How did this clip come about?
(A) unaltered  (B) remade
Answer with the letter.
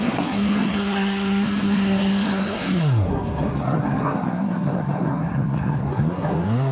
B